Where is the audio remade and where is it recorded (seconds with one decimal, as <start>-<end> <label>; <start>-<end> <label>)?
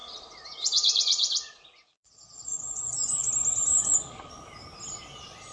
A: 0.0-3.3 remade; 3.3-3.7 recorded; 3.7-4.3 remade; 4.3-5.5 recorded